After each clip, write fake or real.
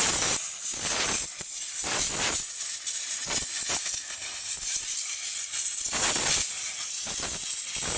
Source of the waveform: real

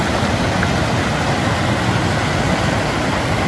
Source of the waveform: real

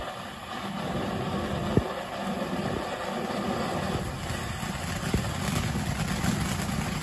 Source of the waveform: real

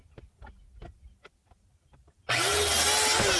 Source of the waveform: real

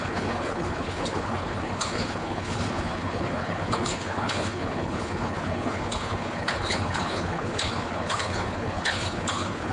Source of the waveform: fake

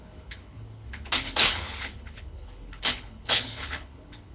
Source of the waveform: fake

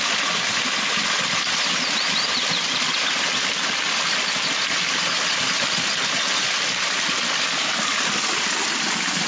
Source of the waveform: real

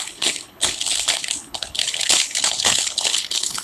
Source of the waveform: fake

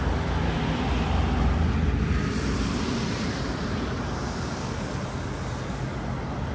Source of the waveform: real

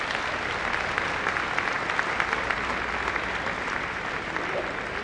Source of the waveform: real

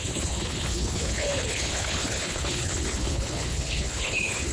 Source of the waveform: fake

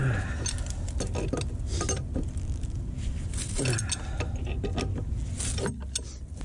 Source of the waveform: real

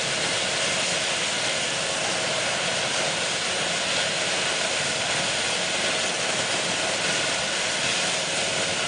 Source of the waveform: real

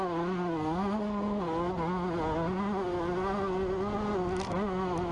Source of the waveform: real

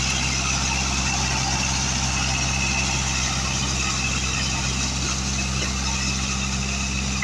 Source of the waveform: real